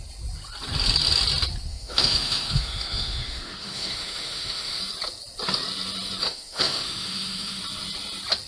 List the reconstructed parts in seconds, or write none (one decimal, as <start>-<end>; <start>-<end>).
1.7-4.8; 6.2-7.6